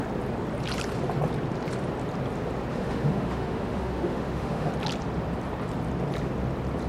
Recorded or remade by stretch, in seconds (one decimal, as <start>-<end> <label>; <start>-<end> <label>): 0.0-2.7 recorded; 2.7-4.7 remade; 4.7-6.9 recorded